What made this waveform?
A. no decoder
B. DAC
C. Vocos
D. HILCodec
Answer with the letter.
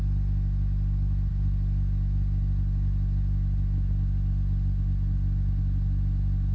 A